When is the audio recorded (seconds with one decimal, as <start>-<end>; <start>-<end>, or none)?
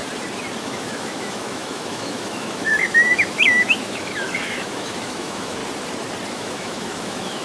0.0-0.6; 5.6-6.3